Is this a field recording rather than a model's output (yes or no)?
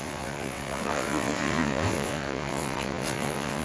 no